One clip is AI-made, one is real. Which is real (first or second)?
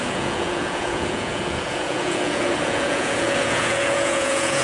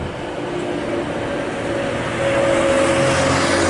second